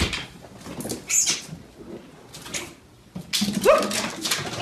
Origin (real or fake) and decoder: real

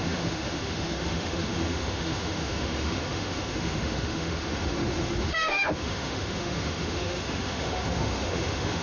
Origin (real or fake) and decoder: fake, autoencoder, DAC-VAE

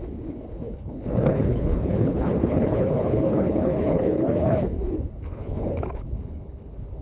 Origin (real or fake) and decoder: fake, codec, HILCodec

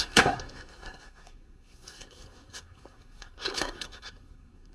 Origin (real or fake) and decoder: fake, codec, SNAC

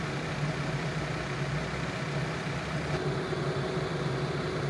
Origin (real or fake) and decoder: real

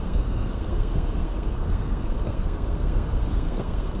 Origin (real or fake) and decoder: fake, codec, SNAC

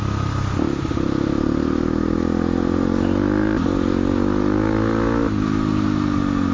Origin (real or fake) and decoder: real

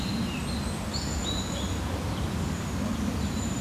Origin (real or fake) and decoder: fake, vocoder, BigVGAN v2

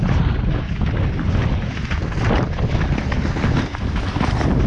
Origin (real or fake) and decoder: real